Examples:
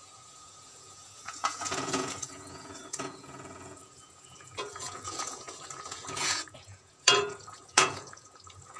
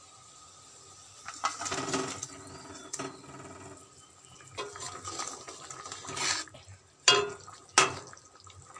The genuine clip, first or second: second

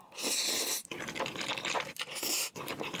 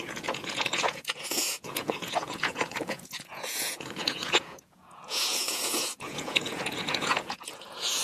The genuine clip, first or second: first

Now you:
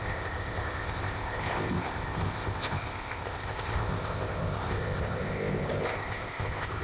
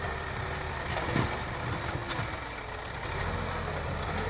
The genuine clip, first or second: second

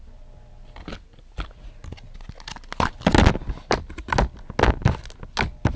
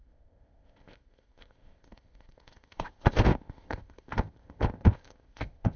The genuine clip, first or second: first